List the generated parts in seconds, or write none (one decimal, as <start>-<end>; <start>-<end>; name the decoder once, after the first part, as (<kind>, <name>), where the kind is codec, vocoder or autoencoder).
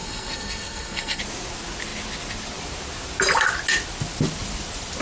0.0-1.2 (codec, SNAC)